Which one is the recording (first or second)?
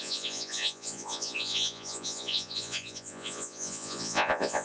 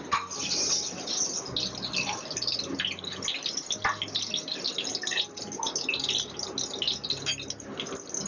second